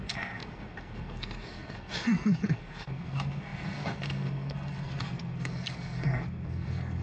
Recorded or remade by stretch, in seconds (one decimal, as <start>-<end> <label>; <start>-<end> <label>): 0.0-7.0 remade